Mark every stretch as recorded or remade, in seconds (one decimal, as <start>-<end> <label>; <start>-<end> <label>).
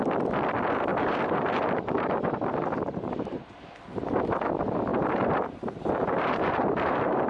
0.0-0.9 recorded; 0.9-3.7 remade; 3.7-4.9 recorded; 4.9-7.3 remade